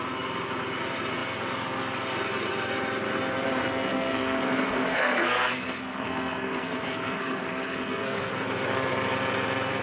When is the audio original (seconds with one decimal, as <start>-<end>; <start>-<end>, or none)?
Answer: 0.0-3.6; 8.3-9.8